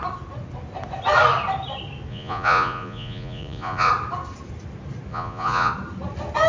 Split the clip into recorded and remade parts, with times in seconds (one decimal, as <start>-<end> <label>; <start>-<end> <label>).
0.0-2.1 recorded; 2.1-3.9 remade; 3.9-5.1 recorded; 5.1-5.7 remade; 5.7-6.5 recorded